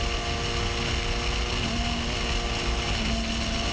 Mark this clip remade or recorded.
recorded